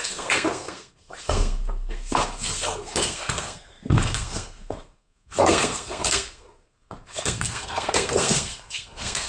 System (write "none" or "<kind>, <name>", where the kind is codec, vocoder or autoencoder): codec, SNAC